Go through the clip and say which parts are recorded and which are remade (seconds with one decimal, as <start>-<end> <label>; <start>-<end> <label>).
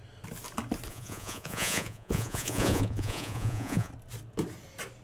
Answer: 0.0-0.9 recorded; 0.9-3.9 remade; 3.9-5.0 recorded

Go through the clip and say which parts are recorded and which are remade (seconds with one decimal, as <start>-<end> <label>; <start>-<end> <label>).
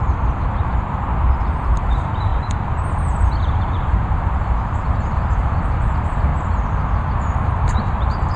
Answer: 0.0-6.3 remade; 6.3-7.7 recorded; 7.7-8.4 remade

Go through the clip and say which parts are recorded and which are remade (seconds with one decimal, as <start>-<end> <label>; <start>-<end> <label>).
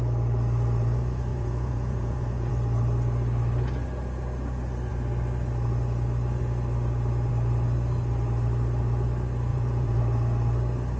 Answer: 0.0-1.3 recorded; 1.3-2.5 remade; 2.5-9.5 recorded; 9.5-10.0 remade; 10.0-11.0 recorded